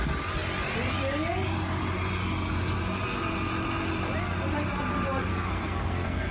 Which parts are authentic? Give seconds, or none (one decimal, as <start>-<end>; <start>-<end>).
0.0-5.3